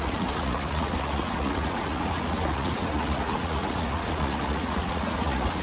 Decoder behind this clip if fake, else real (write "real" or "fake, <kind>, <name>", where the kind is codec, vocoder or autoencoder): fake, vocoder, Vocos